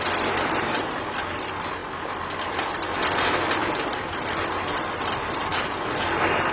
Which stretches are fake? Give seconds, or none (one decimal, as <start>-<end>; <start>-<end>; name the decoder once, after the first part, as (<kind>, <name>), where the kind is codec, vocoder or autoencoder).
none